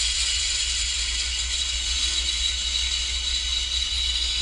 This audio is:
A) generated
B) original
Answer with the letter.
A